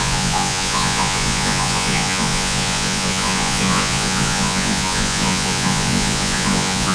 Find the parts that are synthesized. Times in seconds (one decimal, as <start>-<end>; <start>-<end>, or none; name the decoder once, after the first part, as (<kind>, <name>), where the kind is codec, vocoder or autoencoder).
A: 0.0-6.9 (vocoder, Vocos)